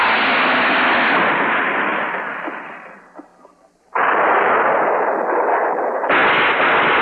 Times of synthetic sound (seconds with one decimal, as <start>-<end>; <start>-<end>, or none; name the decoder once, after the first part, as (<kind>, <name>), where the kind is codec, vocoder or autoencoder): none